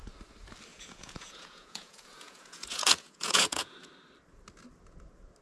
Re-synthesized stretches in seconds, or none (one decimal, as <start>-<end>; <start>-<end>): 0.7-3.9